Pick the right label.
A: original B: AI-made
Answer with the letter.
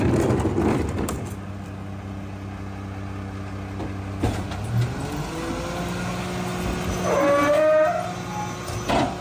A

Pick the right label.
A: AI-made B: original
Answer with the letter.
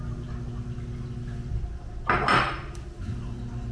B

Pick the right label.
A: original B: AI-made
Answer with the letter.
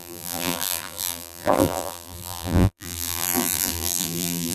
B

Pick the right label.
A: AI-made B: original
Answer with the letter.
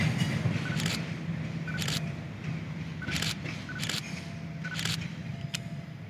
B